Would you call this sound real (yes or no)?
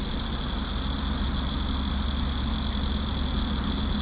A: yes